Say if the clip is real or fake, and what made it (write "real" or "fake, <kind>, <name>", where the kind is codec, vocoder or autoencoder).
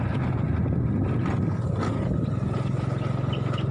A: real